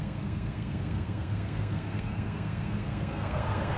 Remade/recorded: remade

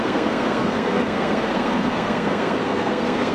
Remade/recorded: remade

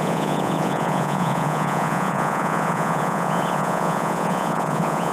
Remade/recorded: remade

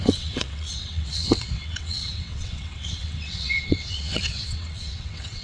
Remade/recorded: remade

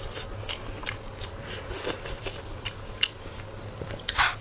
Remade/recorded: recorded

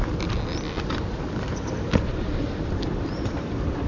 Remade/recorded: recorded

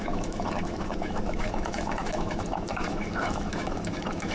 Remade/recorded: remade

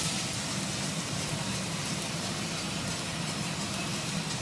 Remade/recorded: recorded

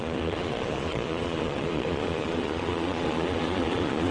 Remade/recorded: remade